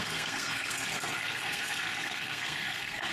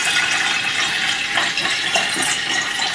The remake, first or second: first